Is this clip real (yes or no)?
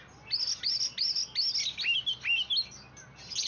yes